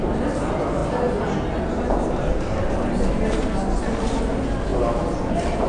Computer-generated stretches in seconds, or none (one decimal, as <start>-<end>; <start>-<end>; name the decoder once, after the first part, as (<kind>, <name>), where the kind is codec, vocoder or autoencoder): none